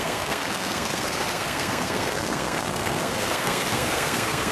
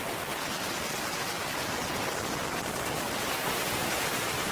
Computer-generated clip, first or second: first